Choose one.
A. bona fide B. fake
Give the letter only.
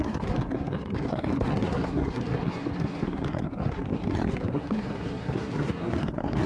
B